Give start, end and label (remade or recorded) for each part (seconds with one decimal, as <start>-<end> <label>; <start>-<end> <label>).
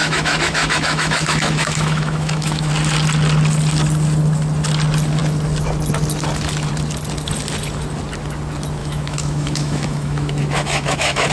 0.0-2.7 remade; 2.7-8.8 recorded; 8.8-11.3 remade